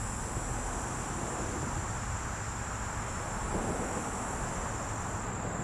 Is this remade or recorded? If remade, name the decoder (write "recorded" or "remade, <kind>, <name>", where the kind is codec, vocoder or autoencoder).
recorded